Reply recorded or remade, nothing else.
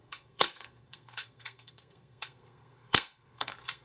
remade